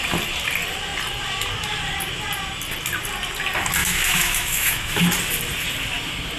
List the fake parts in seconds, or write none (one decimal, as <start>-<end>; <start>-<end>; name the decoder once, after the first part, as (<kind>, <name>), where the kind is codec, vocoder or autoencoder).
3.8-5.0 (autoencoder, DAC-VAE)